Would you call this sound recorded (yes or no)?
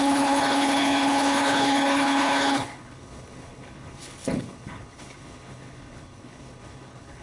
no